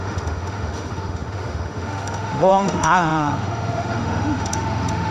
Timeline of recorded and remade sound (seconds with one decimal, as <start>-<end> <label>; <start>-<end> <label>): 0.0-5.1 remade